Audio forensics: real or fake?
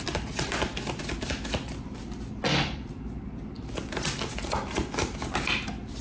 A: real